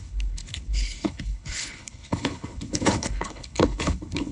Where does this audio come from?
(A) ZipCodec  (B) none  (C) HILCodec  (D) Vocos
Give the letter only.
C